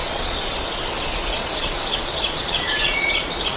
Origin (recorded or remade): remade